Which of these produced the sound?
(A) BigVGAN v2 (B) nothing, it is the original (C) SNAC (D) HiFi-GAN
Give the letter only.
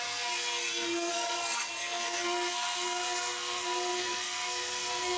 C